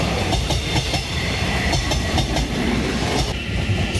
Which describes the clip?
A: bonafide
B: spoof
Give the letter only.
B